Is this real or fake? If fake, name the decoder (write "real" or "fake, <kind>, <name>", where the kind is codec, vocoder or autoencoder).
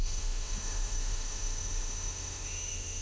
fake, autoencoder, DAC-VAE